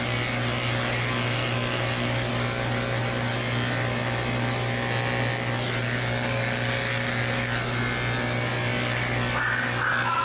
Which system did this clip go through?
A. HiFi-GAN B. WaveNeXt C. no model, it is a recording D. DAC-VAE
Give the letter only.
C